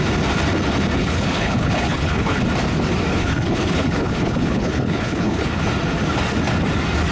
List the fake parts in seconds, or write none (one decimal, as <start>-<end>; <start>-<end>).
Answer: 1.0-2.4; 3.1-5.6